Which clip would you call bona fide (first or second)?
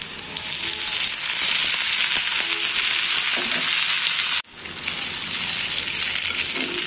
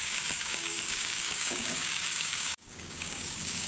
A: first